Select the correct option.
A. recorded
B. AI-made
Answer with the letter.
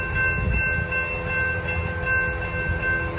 A